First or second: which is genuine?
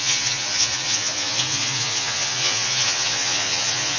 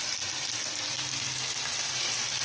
second